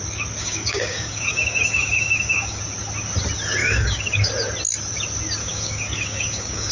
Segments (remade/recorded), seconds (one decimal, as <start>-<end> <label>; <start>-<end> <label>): 0.0-0.4 recorded; 0.4-2.6 remade; 2.6-3.6 recorded; 3.6-4.3 remade; 4.3-5.4 recorded; 5.4-6.7 remade